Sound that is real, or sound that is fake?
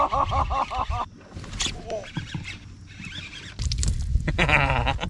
real